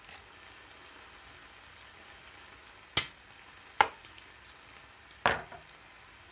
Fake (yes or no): no